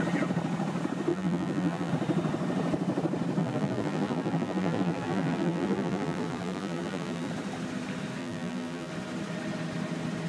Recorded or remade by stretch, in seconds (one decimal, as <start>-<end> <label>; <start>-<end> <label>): 0.0-1.1 recorded; 1.1-1.9 remade; 1.9-3.4 recorded; 3.4-7.3 remade; 7.3-8.2 recorded; 8.2-8.9 remade; 8.9-10.3 recorded